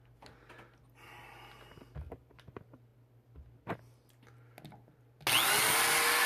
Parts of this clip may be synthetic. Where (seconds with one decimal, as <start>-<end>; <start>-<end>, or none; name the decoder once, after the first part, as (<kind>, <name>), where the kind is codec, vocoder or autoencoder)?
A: none